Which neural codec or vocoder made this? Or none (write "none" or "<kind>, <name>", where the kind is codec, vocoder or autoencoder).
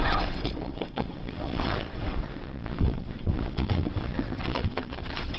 vocoder, WaveNeXt